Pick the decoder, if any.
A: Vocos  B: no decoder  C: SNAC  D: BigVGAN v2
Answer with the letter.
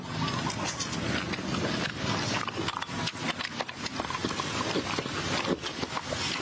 B